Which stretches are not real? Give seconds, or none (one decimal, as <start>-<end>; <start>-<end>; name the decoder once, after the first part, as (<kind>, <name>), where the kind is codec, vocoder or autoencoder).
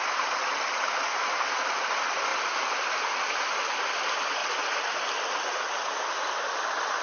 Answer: 0.0-2.3 (vocoder, BigVGAN v2); 3.2-4.4; 5.2-7.0